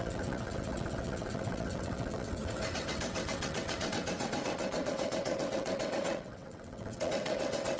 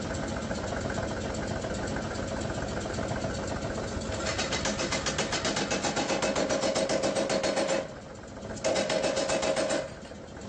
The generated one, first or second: first